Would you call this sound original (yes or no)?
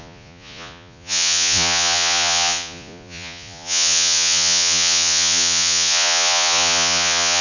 no